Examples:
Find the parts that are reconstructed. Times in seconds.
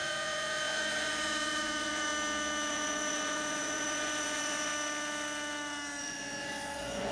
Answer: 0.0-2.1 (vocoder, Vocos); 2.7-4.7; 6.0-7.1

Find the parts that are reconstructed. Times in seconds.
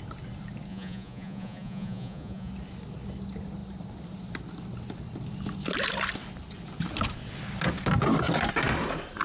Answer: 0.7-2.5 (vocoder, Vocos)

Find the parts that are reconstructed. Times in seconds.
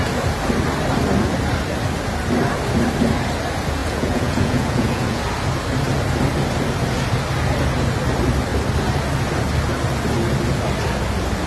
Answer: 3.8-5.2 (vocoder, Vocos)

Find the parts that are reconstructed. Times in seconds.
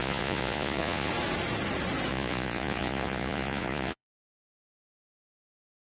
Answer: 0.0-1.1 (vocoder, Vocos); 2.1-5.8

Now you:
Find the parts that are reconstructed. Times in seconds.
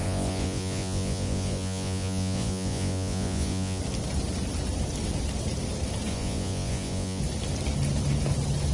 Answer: 0.0-3.8 (vocoder, Vocos); 6.1-7.2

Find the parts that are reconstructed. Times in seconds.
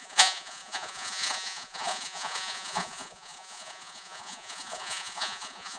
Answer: 0.0-5.8 (vocoder, Vocos)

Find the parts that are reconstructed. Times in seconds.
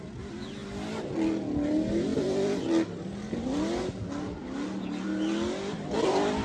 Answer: none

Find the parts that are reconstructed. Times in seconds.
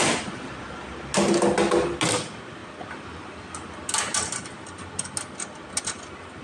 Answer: none